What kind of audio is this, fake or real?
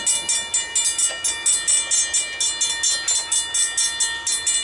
real